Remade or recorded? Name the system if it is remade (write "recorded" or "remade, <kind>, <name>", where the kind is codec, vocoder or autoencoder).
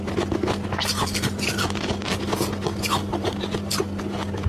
recorded